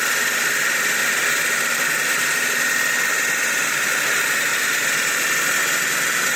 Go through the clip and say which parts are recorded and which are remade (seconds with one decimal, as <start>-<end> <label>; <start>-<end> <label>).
0.0-1.0 recorded; 1.0-2.2 remade; 2.2-6.4 recorded